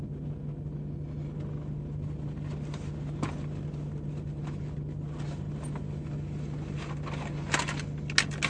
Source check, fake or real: real